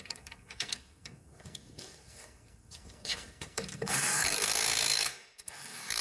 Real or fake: fake